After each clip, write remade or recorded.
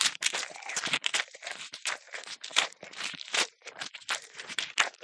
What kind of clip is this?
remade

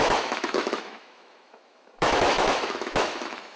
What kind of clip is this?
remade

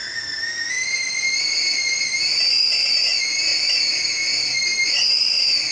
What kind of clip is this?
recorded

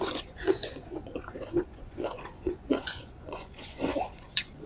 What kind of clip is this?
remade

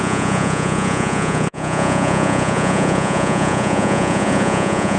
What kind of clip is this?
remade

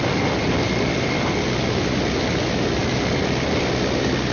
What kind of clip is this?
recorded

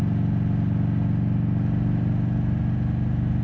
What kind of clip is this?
recorded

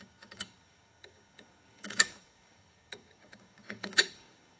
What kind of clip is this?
remade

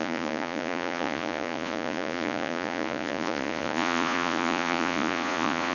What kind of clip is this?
remade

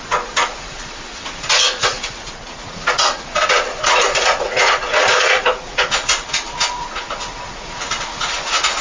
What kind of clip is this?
remade